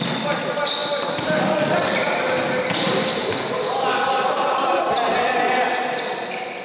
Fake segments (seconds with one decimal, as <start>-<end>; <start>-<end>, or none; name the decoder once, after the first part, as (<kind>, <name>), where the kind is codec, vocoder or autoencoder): none